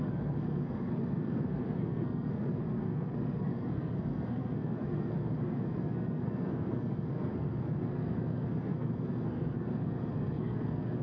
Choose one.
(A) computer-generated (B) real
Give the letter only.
A